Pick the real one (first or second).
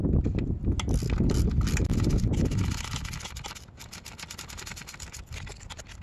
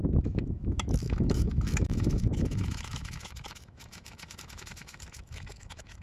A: first